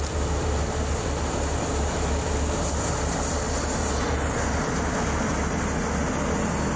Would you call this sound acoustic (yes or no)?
yes